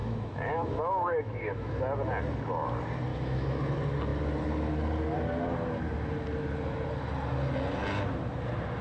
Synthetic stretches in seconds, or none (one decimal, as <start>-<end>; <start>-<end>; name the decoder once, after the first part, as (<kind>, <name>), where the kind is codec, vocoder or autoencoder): 0.0-1.8 (autoencoder, DAC-VAE); 3.1-3.6